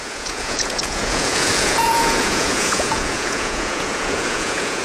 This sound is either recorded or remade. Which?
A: remade